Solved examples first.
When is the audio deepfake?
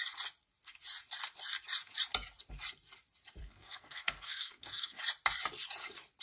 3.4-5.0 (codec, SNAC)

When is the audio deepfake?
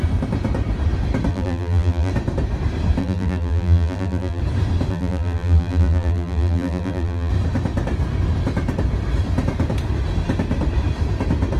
1.3-2.1 (vocoder, BigVGAN v2); 3.0-4.4; 4.9-7.3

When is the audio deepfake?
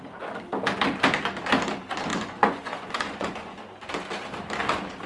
2.1-3.6 (vocoder, Vocos)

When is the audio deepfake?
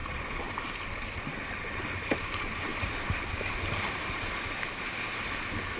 0.0-0.5 (vocoder, Vocos)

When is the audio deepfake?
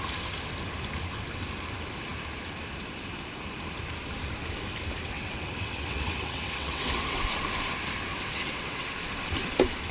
5.0-7.2 (vocoder, WaveNeXt); 8.1-8.9